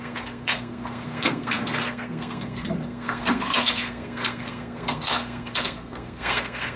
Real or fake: fake